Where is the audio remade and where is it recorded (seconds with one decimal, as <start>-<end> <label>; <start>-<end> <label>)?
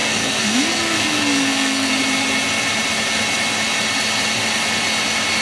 0.0-1.9 remade; 1.9-5.4 recorded